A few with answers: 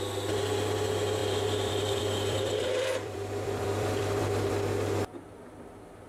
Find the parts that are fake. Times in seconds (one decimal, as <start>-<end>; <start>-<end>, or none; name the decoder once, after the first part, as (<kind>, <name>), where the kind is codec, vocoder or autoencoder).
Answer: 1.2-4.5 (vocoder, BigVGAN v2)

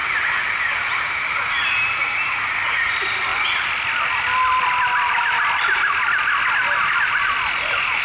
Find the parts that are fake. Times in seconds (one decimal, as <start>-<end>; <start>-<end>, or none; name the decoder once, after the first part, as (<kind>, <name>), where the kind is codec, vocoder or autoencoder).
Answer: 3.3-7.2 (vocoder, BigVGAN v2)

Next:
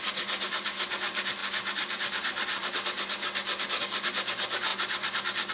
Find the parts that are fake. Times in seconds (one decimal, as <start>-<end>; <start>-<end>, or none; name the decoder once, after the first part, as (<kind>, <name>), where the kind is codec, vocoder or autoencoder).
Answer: none

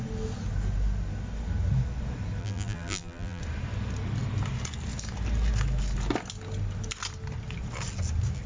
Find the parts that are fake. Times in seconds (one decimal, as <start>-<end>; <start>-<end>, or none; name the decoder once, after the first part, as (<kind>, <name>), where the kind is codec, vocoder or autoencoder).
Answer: 2.4-3.4 (vocoder, BigVGAN v2)

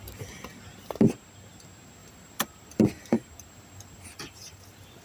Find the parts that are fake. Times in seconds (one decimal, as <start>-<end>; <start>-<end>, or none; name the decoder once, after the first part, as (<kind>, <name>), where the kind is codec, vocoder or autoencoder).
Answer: 2.0-5.0 (vocoder, BigVGAN v2)

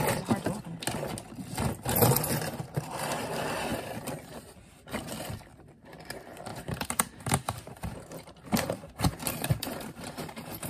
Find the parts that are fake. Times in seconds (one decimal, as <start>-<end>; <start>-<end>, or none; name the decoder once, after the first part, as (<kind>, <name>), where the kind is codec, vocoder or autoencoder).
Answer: 3.7-5.1 (vocoder, BigVGAN v2); 6.5-10.7